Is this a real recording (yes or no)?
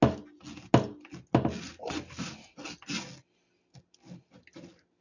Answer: yes